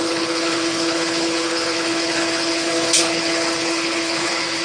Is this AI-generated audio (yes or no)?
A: yes